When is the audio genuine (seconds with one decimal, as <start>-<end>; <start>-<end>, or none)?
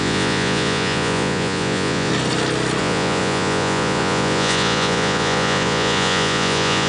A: 2.1-2.8